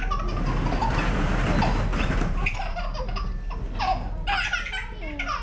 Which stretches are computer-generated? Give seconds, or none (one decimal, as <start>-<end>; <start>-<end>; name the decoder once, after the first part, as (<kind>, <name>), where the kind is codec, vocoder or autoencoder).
0.8-1.5 (vocoder, BigVGAN v2); 1.9-3.0

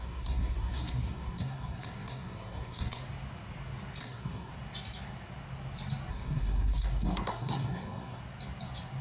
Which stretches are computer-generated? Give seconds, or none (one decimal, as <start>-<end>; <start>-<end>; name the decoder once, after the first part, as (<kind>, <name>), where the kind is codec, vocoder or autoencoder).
0.0-3.0 (codec, SNAC); 4.0-4.5; 6.1-8.2

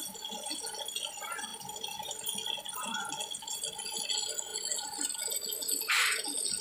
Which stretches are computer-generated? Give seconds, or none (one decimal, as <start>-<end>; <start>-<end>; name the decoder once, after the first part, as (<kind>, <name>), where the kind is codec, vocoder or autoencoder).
none

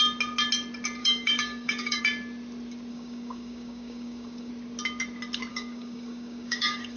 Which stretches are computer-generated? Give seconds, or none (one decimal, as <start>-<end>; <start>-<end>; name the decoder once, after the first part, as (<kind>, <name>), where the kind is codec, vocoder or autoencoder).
1.0-2.0 (codec, DAC); 2.9-4.5; 5.5-7.0

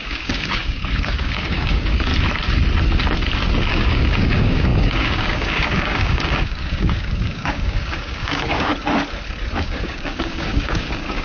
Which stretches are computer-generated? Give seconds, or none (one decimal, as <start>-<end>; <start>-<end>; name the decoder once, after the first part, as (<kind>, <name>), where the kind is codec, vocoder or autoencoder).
0.0-2.1 (codec, DAC); 3.7-8.7; 9.6-11.2

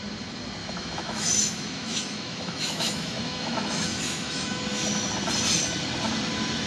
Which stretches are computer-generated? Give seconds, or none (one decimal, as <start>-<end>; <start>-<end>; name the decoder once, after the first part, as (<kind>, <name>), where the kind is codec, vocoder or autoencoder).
0.6-4.6 (autoencoder, DAC-VAE)